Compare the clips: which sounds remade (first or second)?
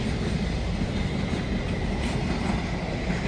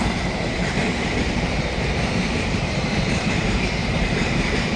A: second